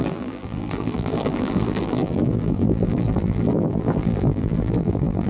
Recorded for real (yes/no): no